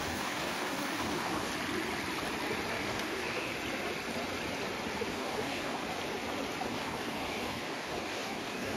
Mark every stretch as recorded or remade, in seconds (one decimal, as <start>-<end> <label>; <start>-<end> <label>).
0.0-1.5 remade; 1.5-2.7 recorded; 2.7-3.5 remade; 3.5-5.1 recorded; 5.1-5.8 remade; 5.8-6.7 recorded; 6.7-8.8 remade